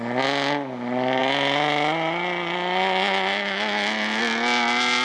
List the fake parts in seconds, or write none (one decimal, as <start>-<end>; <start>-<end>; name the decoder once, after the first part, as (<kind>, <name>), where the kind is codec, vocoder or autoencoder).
none